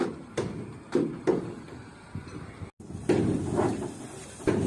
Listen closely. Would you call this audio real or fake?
real